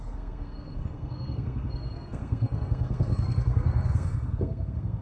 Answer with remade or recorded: remade